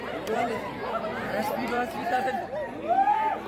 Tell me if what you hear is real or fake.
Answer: fake